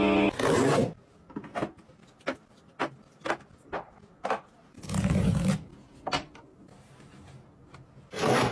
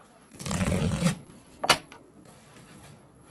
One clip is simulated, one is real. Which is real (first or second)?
first